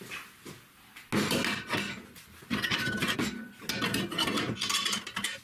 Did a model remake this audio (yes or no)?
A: no